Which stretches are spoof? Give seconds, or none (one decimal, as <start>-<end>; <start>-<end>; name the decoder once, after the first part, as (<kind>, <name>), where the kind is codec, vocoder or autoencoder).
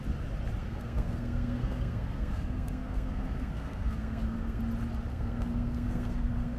0.6-4.6 (codec, SNAC); 5.1-6.6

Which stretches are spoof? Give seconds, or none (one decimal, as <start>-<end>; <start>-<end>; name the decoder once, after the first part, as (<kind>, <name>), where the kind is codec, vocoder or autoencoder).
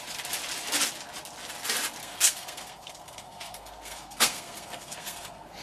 2.0-5.6 (codec, SNAC)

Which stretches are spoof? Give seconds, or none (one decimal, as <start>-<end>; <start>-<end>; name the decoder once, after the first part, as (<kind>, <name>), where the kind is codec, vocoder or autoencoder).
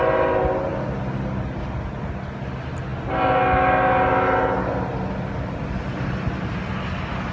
none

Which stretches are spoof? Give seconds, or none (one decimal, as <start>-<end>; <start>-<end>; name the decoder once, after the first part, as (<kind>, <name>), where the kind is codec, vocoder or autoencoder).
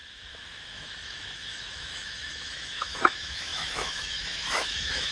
0.0-5.1 (autoencoder, DAC-VAE)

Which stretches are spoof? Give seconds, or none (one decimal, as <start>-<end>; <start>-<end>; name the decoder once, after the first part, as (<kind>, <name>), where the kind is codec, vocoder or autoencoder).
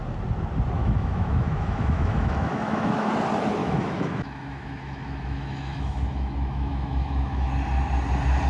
0.8-3.1 (autoencoder, DAC-VAE); 3.6-7.5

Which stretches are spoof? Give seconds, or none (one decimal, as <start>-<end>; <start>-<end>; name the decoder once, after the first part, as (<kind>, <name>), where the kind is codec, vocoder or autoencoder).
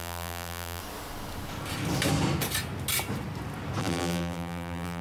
0.0-0.8 (vocoder, BigVGAN v2); 3.8-5.0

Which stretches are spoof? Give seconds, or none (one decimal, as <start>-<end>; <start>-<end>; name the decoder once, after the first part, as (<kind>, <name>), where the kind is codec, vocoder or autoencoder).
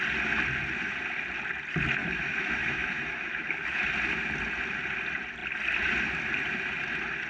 2.0-3.9 (autoencoder, DAC-VAE)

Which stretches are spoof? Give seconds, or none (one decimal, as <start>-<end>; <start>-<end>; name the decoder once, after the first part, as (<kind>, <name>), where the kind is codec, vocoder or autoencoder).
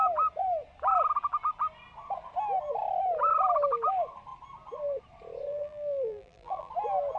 5.5-6.7 (vocoder, BigVGAN v2)